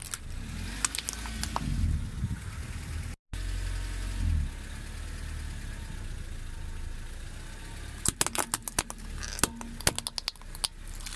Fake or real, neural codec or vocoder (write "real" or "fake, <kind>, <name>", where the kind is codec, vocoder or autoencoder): real